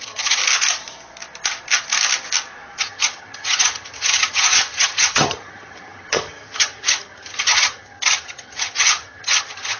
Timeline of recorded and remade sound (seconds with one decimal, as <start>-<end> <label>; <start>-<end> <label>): 0.0-0.4 remade; 0.4-2.8 recorded; 2.8-9.8 remade